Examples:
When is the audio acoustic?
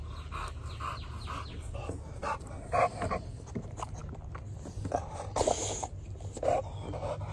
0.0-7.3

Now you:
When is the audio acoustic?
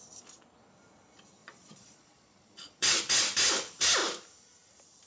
0.0-1.4; 3.0-5.1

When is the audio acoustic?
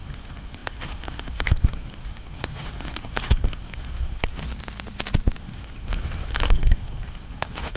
4.4-5.4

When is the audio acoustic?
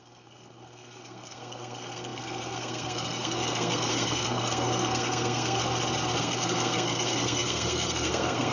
5.6-6.2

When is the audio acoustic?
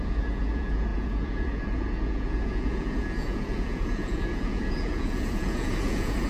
none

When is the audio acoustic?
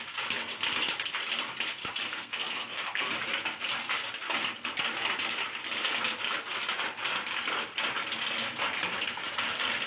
0.0-2.1; 3.1-9.9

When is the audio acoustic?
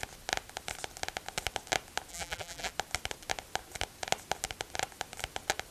0.0-2.1; 2.7-5.7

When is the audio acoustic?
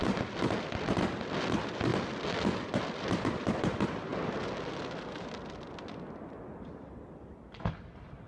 1.9-2.8; 4.1-4.8